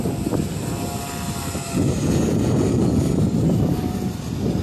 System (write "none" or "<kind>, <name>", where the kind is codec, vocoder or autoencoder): none